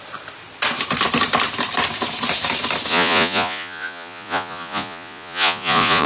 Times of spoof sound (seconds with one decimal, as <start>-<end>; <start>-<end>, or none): 2.9-6.1